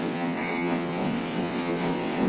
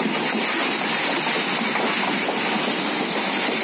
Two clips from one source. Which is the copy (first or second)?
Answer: first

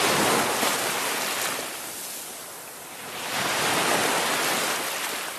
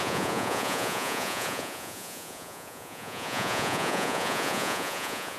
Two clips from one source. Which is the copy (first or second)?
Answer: second